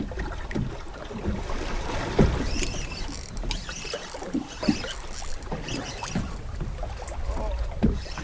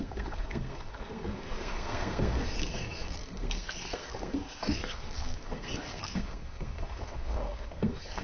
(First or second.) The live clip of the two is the first